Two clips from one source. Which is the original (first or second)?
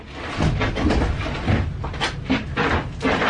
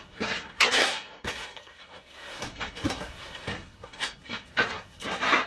first